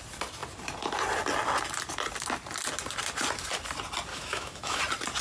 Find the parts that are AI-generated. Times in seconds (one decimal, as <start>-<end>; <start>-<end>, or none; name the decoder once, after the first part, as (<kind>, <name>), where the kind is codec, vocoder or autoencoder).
4.1-4.8 (autoencoder, DAC-VAE)